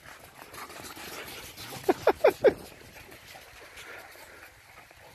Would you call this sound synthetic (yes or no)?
no